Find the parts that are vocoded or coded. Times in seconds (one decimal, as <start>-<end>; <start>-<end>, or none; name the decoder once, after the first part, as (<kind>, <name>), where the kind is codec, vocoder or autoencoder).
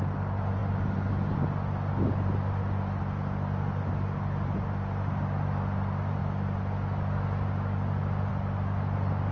none